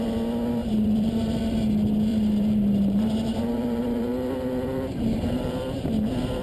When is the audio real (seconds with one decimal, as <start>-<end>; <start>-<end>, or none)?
0.0-0.6; 1.4-2.1; 5.9-6.4